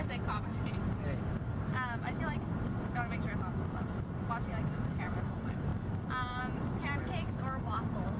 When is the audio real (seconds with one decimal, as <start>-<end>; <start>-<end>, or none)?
0.0-8.2